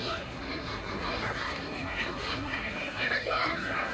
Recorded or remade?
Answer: remade